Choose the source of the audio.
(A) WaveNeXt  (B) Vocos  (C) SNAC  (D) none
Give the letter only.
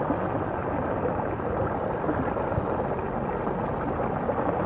D